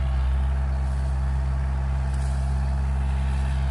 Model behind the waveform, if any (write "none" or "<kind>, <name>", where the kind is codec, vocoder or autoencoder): none